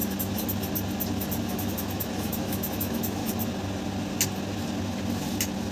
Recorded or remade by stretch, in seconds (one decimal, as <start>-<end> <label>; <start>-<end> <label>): 0.0-1.5 recorded; 1.5-3.2 remade; 3.2-5.7 recorded